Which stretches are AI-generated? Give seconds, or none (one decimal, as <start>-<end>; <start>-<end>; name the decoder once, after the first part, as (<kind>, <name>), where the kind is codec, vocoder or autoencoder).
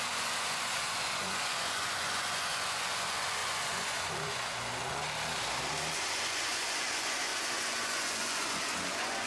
0.0-5.0 (vocoder, Vocos); 5.9-9.3